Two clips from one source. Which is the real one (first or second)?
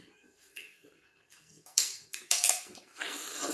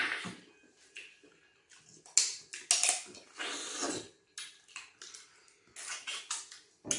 second